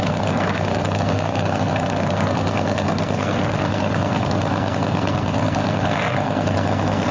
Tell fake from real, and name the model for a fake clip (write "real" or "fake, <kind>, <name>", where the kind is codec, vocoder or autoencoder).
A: fake, codec, SNAC